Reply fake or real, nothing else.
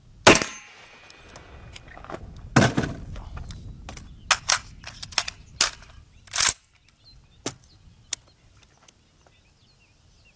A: real